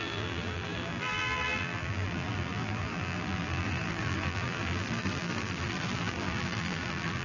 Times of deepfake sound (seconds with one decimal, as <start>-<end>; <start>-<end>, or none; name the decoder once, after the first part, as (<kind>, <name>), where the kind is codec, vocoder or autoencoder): 0.0-7.2 (vocoder, BigVGAN v2)